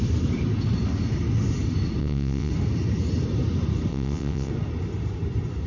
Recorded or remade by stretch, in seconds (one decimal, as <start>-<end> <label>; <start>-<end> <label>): 0.0-2.0 recorded; 2.0-2.5 remade; 2.5-3.9 recorded; 3.9-4.5 remade; 4.5-5.7 recorded